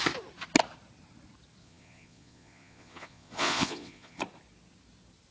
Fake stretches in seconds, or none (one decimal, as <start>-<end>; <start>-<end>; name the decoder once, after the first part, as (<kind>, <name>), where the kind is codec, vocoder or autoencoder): 1.6-4.2 (vocoder, Vocos)